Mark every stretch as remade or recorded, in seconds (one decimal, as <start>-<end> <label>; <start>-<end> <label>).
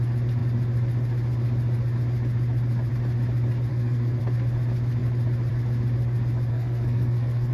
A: 0.0-3.7 recorded; 3.7-4.2 remade; 4.2-6.5 recorded; 6.5-7.5 remade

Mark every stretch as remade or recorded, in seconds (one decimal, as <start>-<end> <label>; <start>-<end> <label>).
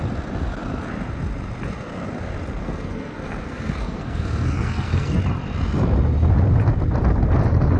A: 0.0-2.6 recorded; 2.6-5.2 remade; 5.2-7.8 recorded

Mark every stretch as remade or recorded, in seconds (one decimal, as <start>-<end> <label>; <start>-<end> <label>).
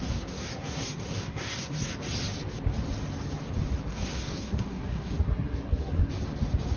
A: 0.0-1.9 remade; 1.9-3.9 recorded; 3.9-6.1 remade; 6.1-6.8 recorded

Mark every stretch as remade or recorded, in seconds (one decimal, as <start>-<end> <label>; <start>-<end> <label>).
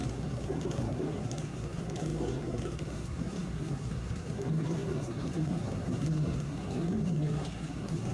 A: 0.0-8.1 remade